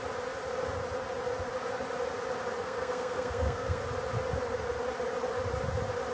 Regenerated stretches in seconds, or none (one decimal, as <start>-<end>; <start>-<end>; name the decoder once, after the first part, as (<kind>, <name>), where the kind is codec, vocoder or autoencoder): 2.6-3.8 (codec, SNAC)